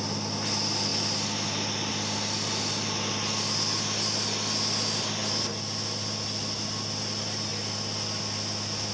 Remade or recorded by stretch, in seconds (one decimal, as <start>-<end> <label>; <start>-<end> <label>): 0.0-8.9 recorded